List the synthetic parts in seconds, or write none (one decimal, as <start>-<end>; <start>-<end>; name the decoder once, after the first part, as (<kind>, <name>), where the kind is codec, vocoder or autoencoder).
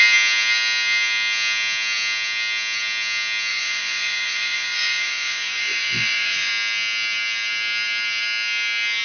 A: 3.5-6.5 (vocoder, Vocos)